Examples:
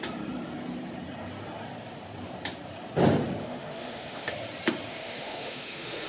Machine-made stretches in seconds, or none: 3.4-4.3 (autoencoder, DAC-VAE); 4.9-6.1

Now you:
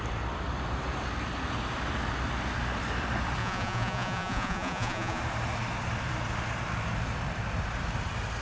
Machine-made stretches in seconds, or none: 3.4-5.2 (vocoder, Vocos)

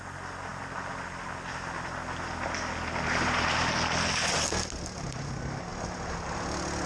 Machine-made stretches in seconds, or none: none

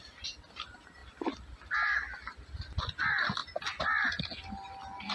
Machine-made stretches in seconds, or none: none

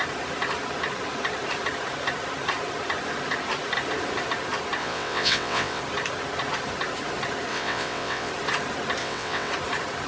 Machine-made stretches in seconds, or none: 4.8-5.8 (vocoder, WaveNeXt); 7.5-8.3; 9.0-9.5